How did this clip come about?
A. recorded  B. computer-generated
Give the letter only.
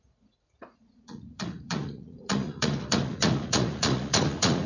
B